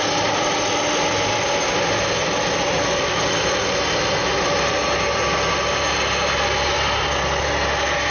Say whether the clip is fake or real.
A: real